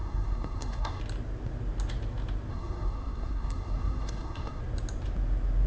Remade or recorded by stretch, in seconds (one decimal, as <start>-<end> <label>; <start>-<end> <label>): 0.0-1.0 remade; 1.0-2.5 recorded; 2.5-4.6 remade; 4.6-5.7 recorded